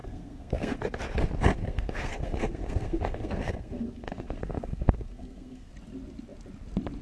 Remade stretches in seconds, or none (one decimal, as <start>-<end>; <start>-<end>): 0.0-0.8; 1.5-5.7